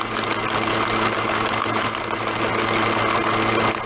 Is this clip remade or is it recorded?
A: recorded